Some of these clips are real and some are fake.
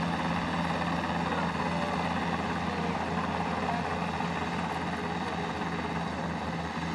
real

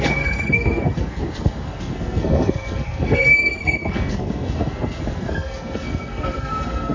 fake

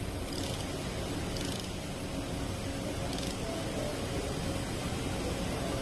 real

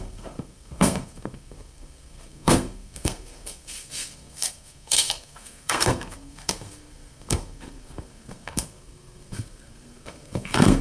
fake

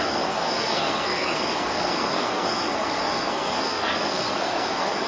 fake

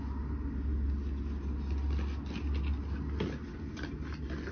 real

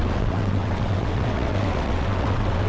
fake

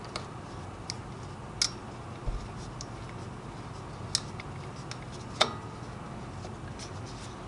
real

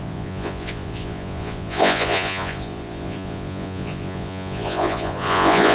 fake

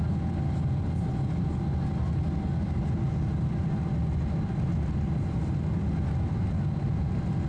real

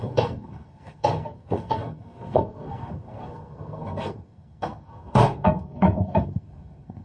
fake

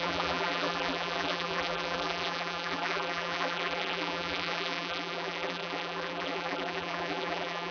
fake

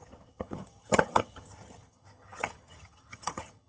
fake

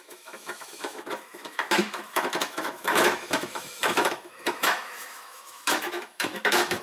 fake